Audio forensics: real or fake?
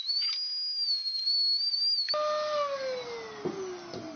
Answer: real